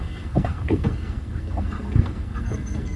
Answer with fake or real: fake